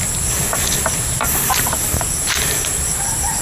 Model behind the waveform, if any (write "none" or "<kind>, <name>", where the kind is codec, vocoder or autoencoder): none